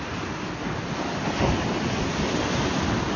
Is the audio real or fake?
real